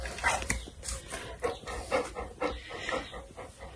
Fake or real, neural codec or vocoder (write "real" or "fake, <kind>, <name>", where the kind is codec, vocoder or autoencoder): fake, vocoder, BigVGAN v2